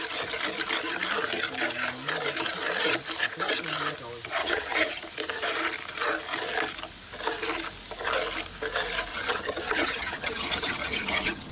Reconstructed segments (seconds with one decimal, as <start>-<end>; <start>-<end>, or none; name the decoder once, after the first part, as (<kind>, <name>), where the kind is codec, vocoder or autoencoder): 4.4-5.0 (vocoder, HiFi-GAN); 9.1-11.5

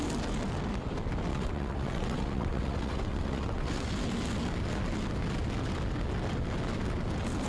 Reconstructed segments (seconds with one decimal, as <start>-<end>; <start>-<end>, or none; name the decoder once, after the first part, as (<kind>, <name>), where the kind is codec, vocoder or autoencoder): 1.3-3.9 (vocoder, WaveNeXt)

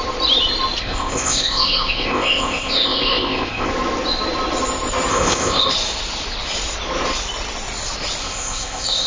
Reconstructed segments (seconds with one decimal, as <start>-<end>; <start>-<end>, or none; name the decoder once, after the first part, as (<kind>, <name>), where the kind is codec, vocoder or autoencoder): 0.8-3.7 (codec, ZipCodec); 5.1-5.7; 8.2-9.1

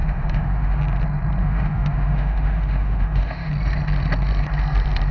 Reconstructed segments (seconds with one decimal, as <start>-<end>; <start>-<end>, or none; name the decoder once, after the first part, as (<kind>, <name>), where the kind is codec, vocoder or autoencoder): 0.0-0.8 (autoencoder, DAC-VAE); 1.4-3.5

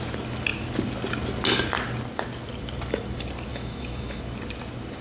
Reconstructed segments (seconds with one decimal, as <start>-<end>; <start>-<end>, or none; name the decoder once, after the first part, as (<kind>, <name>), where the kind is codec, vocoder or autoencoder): 3.5-4.2 (autoencoder, DAC-VAE)

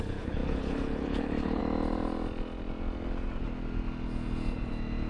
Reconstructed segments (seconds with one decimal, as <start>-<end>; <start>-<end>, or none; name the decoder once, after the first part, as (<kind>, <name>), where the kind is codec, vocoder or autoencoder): 0.0-1.6 (codec, HILCodec)

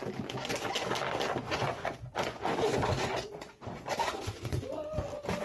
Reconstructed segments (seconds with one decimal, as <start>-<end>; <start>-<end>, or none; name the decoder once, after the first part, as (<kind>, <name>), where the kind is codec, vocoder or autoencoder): 1.4-4.6 (vocoder, Vocos)

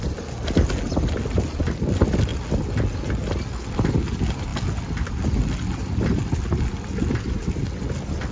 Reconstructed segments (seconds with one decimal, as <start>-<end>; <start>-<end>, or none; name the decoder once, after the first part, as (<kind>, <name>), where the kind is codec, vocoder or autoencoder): none